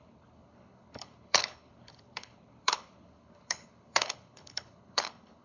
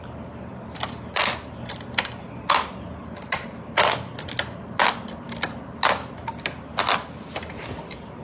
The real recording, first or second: second